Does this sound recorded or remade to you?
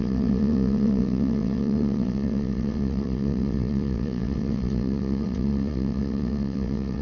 remade